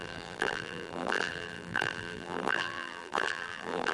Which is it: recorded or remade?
remade